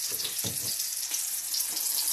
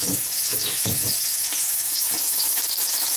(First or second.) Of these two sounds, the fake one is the second